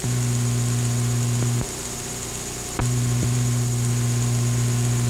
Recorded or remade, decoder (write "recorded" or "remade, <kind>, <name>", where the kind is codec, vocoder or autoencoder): recorded